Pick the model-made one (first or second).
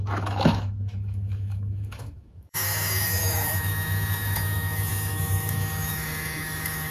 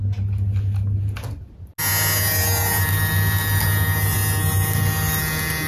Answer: first